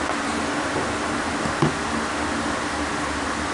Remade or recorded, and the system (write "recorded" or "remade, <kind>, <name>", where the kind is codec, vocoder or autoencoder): recorded